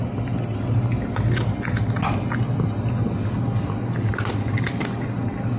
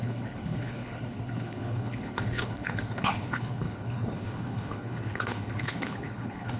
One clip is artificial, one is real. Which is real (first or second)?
first